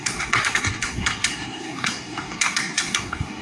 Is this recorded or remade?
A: remade